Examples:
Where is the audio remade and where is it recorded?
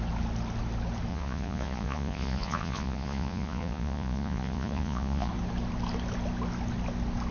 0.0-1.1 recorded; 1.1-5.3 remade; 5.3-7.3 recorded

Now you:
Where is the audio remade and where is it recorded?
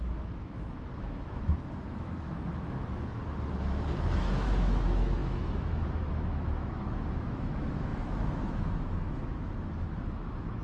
0.0-10.6 remade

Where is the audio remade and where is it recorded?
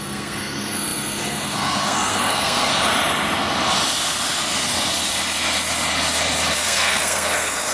0.0-2.7 remade; 2.7-6.5 recorded; 6.5-7.7 remade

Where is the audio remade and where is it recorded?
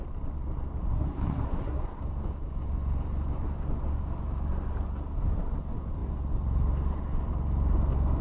0.0-0.9 recorded; 0.9-2.0 remade; 2.0-8.2 recorded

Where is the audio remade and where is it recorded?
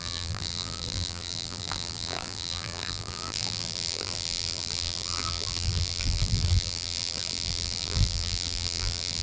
0.0-9.2 remade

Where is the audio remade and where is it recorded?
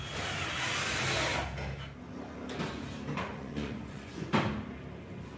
0.0-3.3 recorded; 3.3-4.3 remade; 4.3-5.4 recorded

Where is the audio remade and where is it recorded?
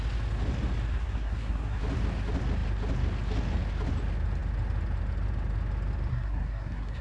0.0-0.9 recorded; 0.9-1.8 remade; 1.8-6.1 recorded; 6.1-7.0 remade